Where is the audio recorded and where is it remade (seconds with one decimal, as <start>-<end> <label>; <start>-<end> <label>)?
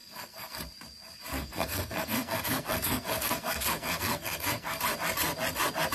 0.0-0.6 remade; 0.6-1.3 recorded; 1.3-4.8 remade; 4.8-5.9 recorded